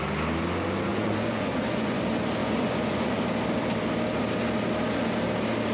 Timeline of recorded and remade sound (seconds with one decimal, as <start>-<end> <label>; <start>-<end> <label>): 0.0-0.9 recorded; 0.9-2.0 remade; 2.0-2.4 recorded; 2.4-3.2 remade; 3.2-5.7 recorded